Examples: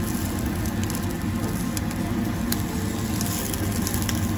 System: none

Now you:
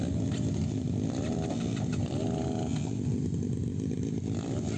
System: none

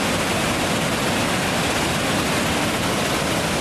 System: none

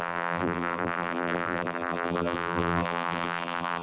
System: vocoder, BigVGAN v2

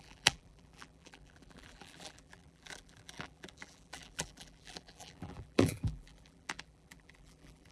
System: vocoder, BigVGAN v2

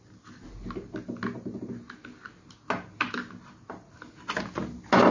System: none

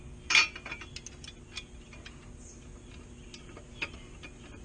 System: none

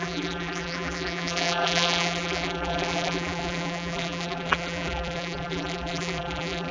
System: vocoder, BigVGAN v2